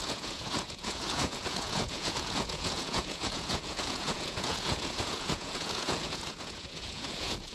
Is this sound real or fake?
fake